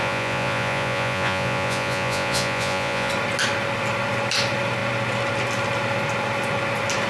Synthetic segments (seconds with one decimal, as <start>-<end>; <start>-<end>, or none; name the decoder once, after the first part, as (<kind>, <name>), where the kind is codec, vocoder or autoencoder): 0.0-3.1 (vocoder, Vocos)